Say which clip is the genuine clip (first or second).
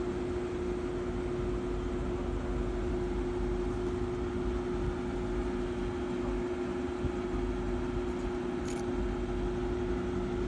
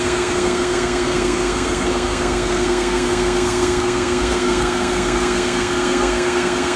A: first